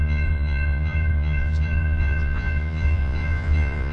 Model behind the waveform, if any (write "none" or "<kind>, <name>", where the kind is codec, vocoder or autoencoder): vocoder, Vocos